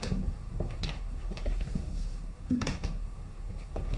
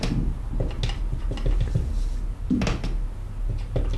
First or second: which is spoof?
first